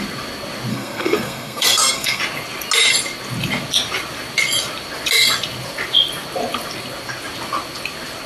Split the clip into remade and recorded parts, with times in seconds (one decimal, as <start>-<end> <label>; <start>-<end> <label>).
0.0-0.7 recorded; 0.7-2.2 remade; 2.2-8.3 recorded

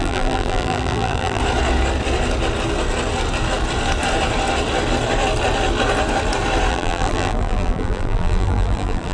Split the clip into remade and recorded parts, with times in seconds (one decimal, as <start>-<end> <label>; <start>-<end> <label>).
0.0-1.4 remade; 1.4-6.7 recorded; 6.7-9.1 remade

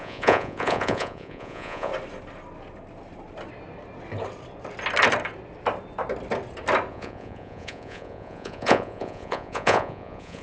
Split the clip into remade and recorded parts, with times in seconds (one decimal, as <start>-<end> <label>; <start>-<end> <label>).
0.0-1.9 remade; 1.9-6.9 recorded; 6.9-10.4 remade

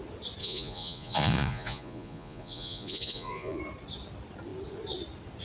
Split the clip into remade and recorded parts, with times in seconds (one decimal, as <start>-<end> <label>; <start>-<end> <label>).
0.0-0.4 recorded; 0.4-3.6 remade; 3.6-5.4 recorded

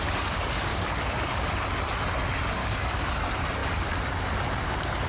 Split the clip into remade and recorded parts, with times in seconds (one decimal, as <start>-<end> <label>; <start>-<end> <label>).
0.0-0.7 recorded; 0.7-1.5 remade; 1.5-2.6 recorded; 2.6-3.2 remade; 3.2-5.1 recorded